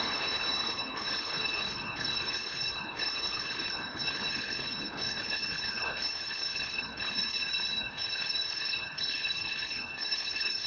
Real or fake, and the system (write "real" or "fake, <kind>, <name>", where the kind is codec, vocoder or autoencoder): fake, codec, HILCodec